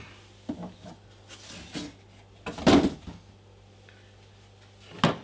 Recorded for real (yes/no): yes